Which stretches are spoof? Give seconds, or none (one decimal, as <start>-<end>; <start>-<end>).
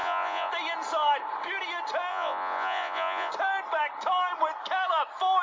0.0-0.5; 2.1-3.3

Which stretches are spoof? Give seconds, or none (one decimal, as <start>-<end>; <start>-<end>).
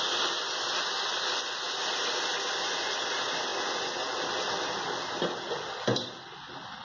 none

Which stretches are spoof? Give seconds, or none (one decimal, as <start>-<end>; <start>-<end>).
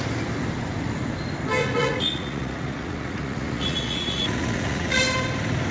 1.6-5.0